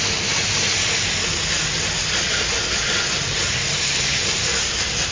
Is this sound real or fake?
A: real